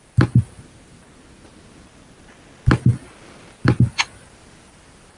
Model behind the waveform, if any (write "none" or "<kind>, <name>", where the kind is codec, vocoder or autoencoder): none